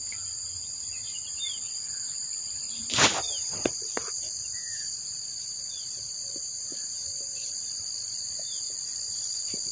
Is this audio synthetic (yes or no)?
no